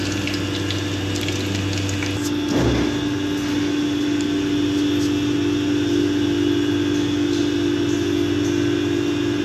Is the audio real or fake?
real